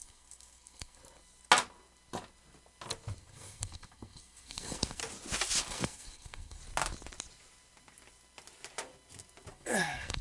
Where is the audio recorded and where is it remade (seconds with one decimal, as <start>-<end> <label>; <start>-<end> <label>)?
0.0-1.0 remade; 1.0-3.2 recorded; 3.2-5.0 remade; 5.0-5.6 recorded; 5.6-6.6 remade; 6.6-9.5 recorded; 9.5-10.2 remade